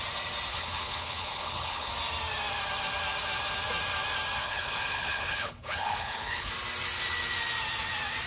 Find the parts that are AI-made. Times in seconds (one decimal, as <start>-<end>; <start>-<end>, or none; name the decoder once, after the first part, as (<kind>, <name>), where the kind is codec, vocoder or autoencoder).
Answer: 0.5-1.9 (codec, HILCodec); 4.4-6.5